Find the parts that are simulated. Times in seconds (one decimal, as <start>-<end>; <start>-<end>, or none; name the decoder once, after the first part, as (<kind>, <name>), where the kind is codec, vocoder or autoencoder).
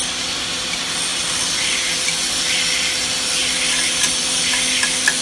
none